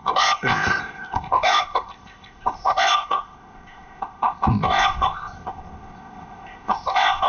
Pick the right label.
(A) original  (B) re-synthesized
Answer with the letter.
B